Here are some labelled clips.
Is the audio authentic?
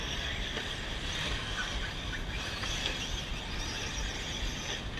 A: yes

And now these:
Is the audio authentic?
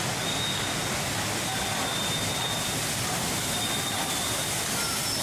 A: yes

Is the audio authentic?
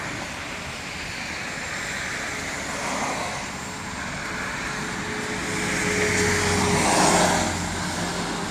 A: yes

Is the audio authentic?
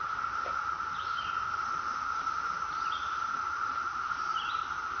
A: yes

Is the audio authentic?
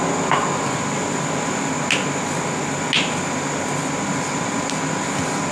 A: yes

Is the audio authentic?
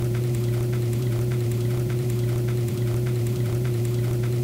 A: no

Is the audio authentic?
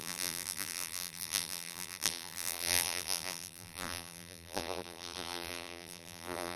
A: no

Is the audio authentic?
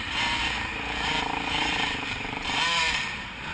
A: no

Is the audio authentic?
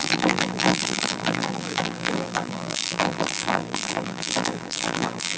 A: no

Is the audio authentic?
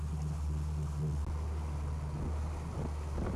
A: yes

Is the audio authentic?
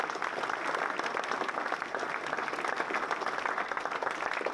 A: yes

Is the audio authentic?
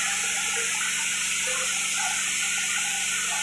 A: yes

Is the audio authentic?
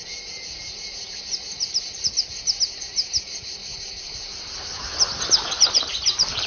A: no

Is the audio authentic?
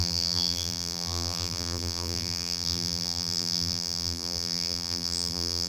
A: no